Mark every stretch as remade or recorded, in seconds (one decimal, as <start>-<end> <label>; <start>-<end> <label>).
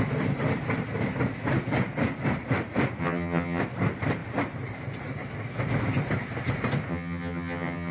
0.0-3.0 recorded; 3.0-3.6 remade; 3.6-6.9 recorded; 6.9-7.9 remade